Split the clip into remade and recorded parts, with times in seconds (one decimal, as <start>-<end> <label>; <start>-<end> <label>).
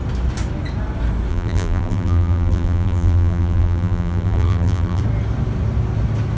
0.0-1.3 recorded; 1.3-5.0 remade; 5.0-6.4 recorded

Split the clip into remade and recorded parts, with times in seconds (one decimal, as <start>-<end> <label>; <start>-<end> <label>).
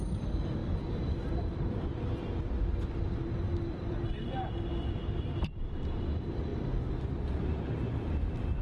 0.0-0.6 recorded; 0.6-5.7 remade; 5.7-6.5 recorded; 6.5-7.4 remade; 7.4-8.6 recorded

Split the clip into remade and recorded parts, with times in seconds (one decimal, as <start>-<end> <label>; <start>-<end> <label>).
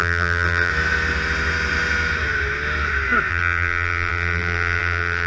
0.0-0.7 remade; 0.7-3.3 recorded; 3.3-5.3 remade